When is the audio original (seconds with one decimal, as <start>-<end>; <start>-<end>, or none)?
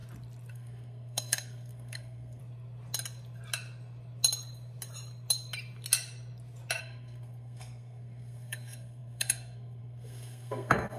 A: 0.0-0.5; 2.4-6.8